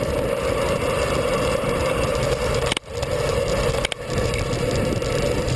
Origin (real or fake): real